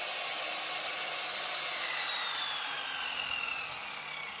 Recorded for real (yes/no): yes